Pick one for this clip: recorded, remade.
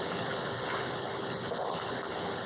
remade